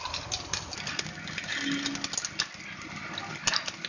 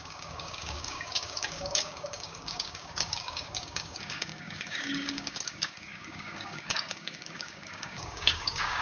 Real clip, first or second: first